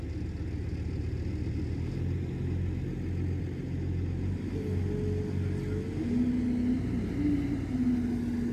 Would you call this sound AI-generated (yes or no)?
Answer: no